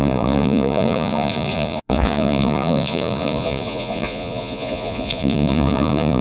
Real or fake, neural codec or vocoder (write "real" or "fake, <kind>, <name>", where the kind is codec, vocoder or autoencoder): fake, vocoder, Vocos